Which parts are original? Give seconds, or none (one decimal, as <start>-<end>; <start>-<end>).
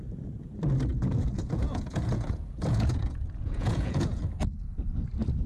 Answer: 0.0-0.9; 4.2-5.5